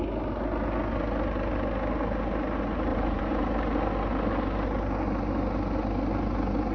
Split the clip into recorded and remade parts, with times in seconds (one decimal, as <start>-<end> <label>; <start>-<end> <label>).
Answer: 0.0-2.9 recorded; 2.9-3.6 remade; 3.6-6.7 recorded